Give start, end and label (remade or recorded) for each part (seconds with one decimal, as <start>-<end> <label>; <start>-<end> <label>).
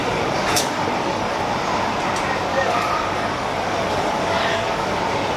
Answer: 0.0-1.4 remade; 1.4-2.5 recorded; 2.5-5.0 remade; 5.0-5.4 recorded